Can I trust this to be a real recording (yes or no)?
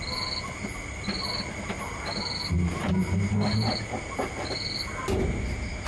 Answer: yes